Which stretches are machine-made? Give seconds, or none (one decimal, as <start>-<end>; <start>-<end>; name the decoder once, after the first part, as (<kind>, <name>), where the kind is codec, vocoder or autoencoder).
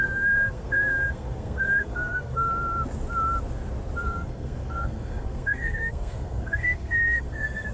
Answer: 0.0-2.5 (codec, SNAC); 4.0-7.7